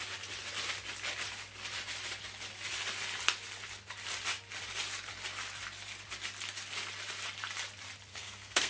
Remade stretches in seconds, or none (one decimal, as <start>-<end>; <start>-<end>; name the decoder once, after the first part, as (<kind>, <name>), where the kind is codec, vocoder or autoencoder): 8.1-8.7 (codec, SNAC)